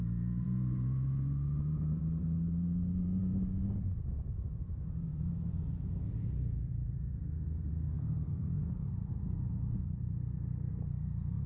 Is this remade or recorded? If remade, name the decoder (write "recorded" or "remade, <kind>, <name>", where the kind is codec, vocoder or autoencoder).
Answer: remade, vocoder, Vocos